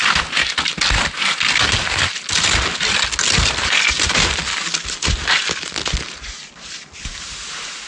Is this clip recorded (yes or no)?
yes